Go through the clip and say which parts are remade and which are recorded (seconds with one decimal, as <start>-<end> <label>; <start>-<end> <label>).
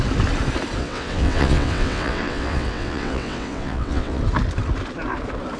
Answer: 0.0-0.8 recorded; 0.8-4.2 remade; 4.2-5.6 recorded